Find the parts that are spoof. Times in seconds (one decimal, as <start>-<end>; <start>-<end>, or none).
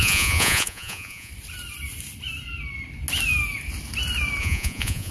0.0-1.3; 4.4-5.1